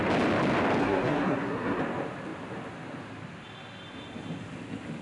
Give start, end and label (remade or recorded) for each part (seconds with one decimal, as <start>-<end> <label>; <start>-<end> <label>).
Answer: 0.0-0.8 recorded; 0.8-1.8 remade; 1.8-5.0 recorded